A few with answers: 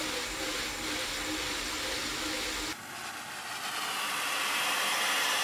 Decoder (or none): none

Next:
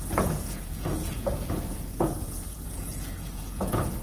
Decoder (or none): vocoder, Vocos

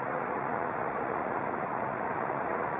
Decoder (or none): vocoder, Vocos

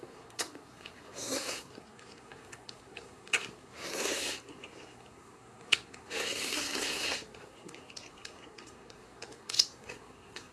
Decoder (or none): codec, SNAC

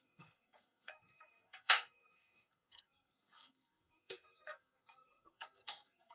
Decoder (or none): codec, SNAC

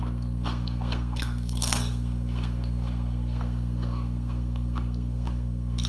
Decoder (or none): codec, SNAC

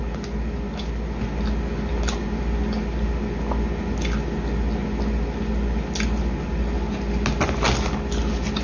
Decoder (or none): none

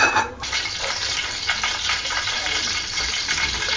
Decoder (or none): vocoder, BigVGAN v2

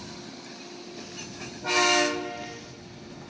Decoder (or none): none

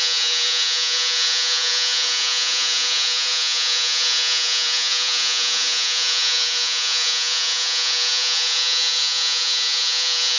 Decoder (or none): vocoder, Vocos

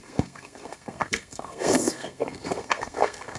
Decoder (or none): codec, SNAC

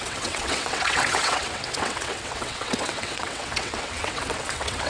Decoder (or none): vocoder, WaveNeXt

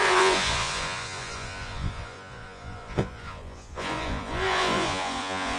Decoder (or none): vocoder, Vocos